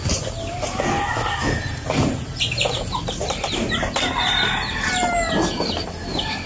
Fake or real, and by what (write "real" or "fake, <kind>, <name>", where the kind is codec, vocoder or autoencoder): real